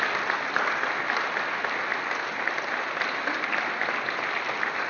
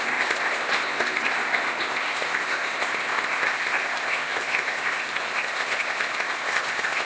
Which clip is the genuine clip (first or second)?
first